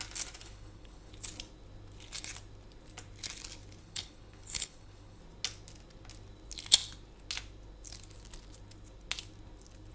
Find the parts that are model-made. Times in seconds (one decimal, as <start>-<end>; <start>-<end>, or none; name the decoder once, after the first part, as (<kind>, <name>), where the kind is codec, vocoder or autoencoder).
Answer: 0.4-1.1 (codec, HILCodec); 3.8-5.2